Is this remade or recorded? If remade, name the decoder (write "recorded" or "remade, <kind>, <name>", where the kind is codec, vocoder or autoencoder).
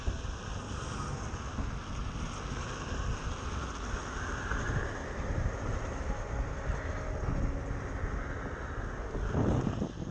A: recorded